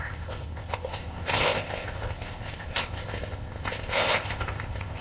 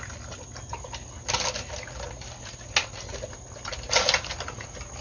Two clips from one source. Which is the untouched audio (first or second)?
second